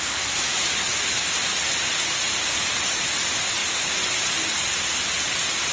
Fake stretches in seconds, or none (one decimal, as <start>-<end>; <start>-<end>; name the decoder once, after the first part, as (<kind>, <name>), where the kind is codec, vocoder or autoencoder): none